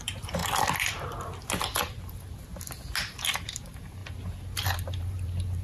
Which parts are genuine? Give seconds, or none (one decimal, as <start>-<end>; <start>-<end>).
0.4-3.1; 4.0-4.6